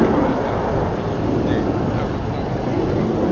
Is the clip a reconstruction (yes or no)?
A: no